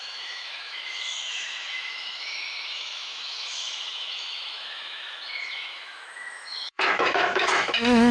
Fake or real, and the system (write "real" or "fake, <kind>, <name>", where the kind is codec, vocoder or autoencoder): fake, autoencoder, DAC-VAE